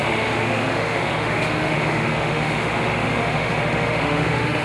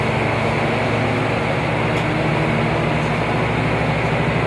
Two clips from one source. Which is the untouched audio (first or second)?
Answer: second